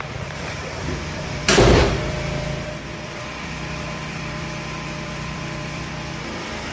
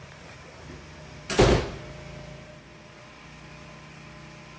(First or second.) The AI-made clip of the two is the first